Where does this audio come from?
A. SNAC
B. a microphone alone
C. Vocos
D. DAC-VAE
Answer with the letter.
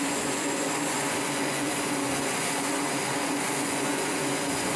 C